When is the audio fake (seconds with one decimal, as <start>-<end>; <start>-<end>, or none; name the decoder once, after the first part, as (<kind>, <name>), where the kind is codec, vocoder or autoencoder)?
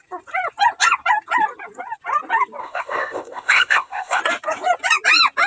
2.6-4.2 (codec, ZipCodec)